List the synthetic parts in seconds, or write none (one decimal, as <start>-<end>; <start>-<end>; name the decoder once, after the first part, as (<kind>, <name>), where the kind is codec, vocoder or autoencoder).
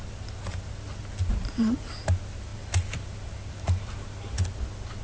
1.3-1.9 (vocoder, BigVGAN v2)